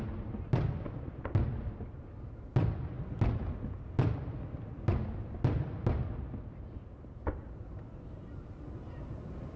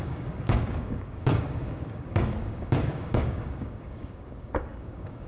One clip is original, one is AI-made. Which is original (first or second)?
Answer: first